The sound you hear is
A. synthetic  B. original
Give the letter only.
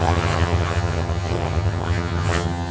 A